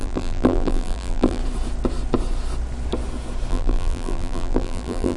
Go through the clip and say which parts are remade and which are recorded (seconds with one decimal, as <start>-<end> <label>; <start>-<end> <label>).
0.0-1.4 remade; 1.4-3.5 recorded; 3.5-5.2 remade